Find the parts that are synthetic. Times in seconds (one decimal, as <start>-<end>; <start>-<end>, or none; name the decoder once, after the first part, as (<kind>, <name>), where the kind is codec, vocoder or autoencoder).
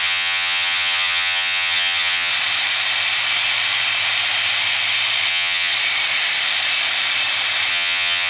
0.0-2.3 (vocoder, HiFi-GAN); 5.3-5.7; 7.7-8.3